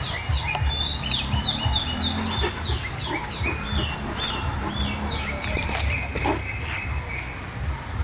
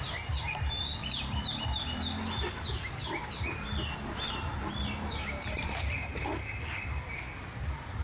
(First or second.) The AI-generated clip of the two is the second